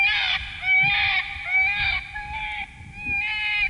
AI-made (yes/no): no